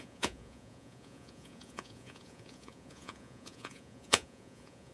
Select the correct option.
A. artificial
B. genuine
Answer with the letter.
A